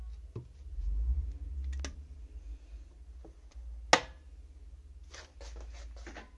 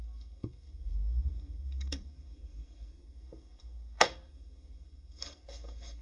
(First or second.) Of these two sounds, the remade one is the second